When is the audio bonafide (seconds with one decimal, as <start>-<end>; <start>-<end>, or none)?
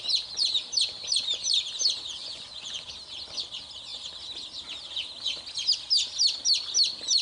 0.0-2.2; 2.9-7.2